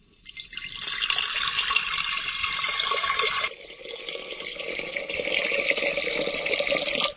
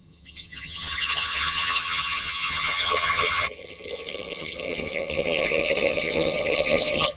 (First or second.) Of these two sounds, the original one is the first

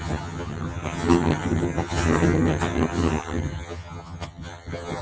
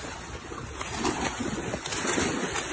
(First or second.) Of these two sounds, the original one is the second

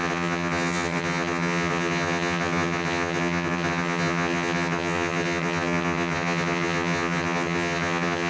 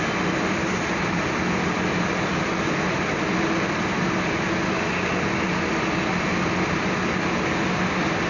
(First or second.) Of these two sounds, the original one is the second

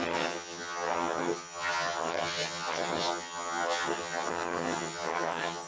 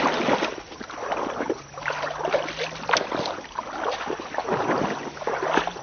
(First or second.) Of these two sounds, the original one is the second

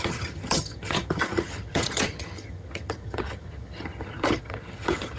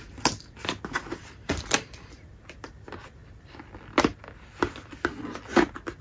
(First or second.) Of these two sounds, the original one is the second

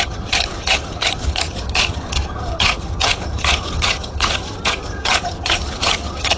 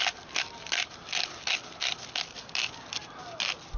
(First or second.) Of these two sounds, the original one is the second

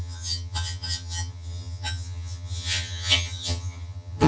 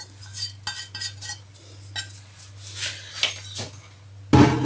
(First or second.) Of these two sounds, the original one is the second